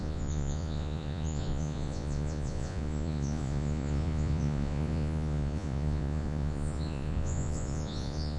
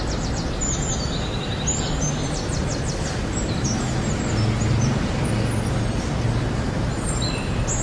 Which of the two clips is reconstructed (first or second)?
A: first